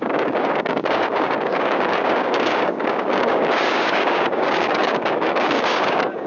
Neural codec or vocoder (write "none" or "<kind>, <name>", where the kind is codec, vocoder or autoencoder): codec, DAC